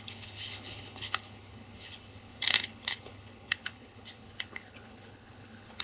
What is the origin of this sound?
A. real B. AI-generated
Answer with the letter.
B